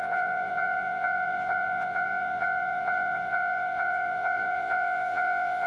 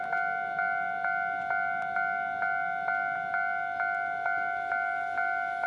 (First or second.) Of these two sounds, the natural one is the second